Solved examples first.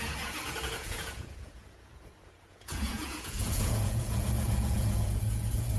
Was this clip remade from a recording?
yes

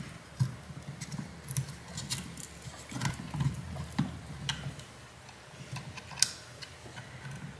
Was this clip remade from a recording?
no